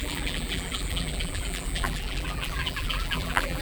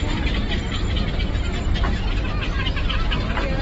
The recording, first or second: second